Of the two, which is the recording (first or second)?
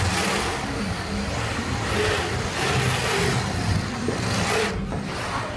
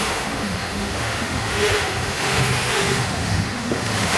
first